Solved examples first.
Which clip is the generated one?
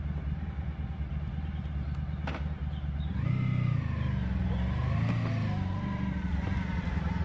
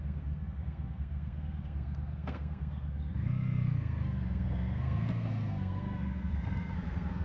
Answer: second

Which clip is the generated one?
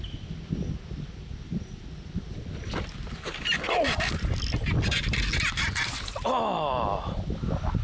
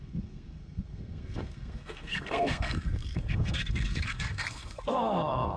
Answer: second